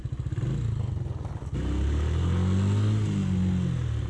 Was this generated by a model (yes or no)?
no